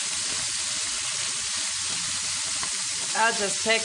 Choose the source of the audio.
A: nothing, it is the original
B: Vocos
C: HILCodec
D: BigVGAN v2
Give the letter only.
A